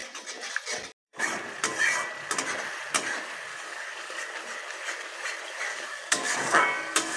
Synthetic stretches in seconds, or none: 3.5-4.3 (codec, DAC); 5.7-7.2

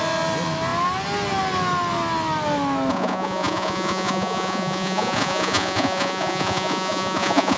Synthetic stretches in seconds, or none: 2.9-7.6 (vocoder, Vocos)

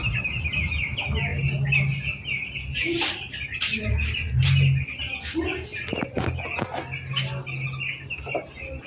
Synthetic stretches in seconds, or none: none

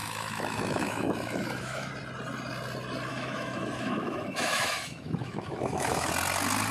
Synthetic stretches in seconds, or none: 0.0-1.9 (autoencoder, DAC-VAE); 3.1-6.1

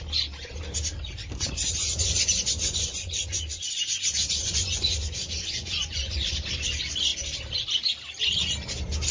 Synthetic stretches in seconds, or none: 1.6-6.3 (vocoder, Vocos)